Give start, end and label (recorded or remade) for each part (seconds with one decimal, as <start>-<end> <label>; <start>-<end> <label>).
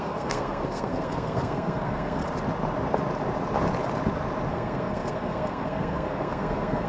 0.0-2.2 remade; 2.2-4.5 recorded; 4.5-6.9 remade